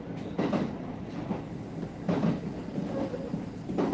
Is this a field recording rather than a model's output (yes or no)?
yes